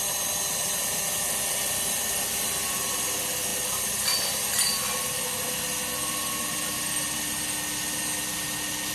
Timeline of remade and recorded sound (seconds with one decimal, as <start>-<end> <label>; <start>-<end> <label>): 0.0-8.9 recorded